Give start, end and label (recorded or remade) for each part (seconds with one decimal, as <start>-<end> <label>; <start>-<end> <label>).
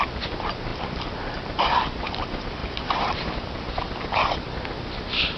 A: 0.0-5.4 recorded